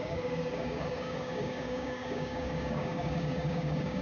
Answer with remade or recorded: remade